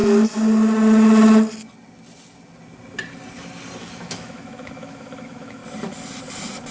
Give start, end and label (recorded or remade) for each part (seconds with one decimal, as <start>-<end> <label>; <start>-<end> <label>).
0.0-3.8 recorded; 3.8-5.6 remade; 5.6-6.7 recorded